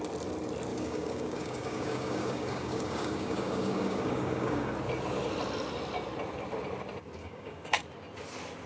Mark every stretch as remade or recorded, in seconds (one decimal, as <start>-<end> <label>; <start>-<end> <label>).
0.0-0.7 recorded; 0.7-4.7 remade; 4.7-7.2 recorded; 7.2-7.8 remade; 7.8-8.7 recorded